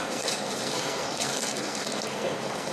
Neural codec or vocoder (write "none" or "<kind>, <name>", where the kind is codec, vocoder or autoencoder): codec, SNAC